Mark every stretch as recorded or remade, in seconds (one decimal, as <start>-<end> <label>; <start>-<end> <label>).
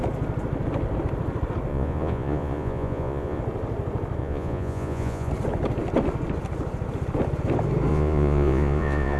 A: 0.0-1.7 recorded; 1.7-3.4 remade; 3.4-4.2 recorded; 4.2-5.3 remade; 5.3-7.9 recorded; 7.9-9.2 remade